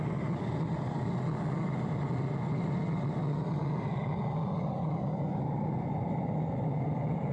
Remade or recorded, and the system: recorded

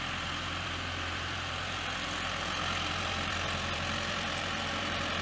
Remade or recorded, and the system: remade, vocoder, BigVGAN v2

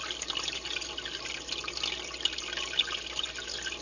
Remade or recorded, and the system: recorded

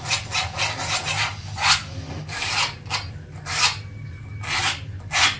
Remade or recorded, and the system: recorded